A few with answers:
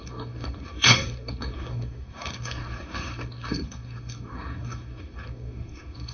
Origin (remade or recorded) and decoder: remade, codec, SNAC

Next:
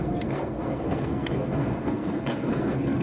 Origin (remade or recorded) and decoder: remade, codec, SNAC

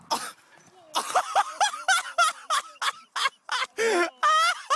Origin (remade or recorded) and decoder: recorded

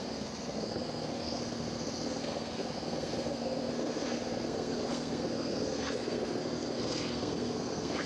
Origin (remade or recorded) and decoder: remade, codec, SNAC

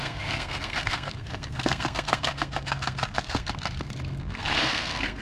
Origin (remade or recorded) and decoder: remade, codec, SNAC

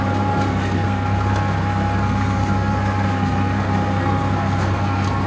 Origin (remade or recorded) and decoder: remade, codec, SNAC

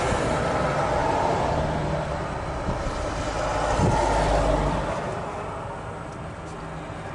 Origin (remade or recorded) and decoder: recorded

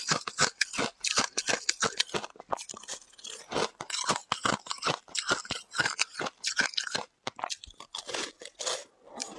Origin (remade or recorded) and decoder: recorded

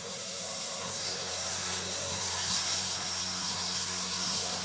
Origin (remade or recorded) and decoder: remade, codec, SNAC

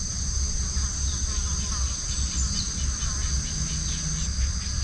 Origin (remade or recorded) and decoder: recorded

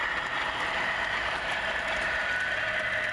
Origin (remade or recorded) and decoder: recorded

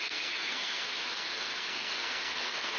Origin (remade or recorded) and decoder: remade, codec, SNAC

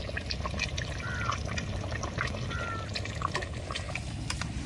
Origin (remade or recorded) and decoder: recorded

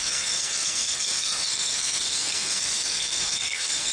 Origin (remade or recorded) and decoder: remade, codec, SNAC